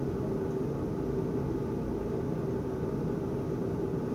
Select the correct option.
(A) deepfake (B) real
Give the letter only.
B